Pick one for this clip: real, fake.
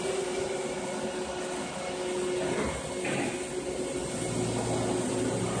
real